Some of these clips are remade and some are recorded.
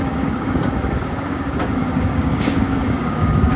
remade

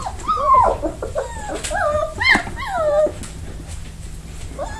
recorded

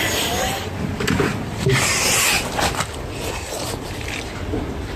recorded